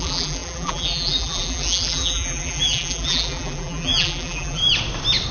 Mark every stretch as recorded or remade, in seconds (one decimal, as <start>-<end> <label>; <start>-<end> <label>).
0.0-4.6 remade; 4.6-5.3 recorded